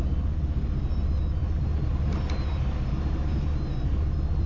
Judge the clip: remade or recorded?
recorded